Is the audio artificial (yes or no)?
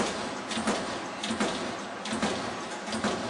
no